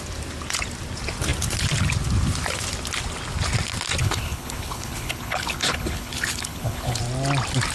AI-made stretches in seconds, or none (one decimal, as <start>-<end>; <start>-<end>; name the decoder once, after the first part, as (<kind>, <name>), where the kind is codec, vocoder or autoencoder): 4.0-7.0 (codec, HILCodec)